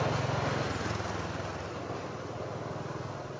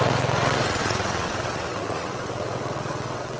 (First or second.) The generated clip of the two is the second